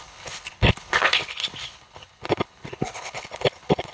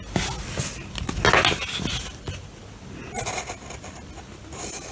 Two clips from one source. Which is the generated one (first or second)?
first